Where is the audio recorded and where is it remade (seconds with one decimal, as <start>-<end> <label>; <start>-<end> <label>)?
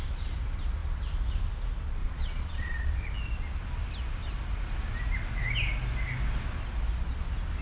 0.0-2.0 recorded; 2.0-3.0 remade; 3.0-7.6 recorded